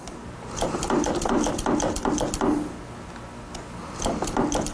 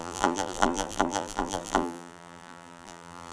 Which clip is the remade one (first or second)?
second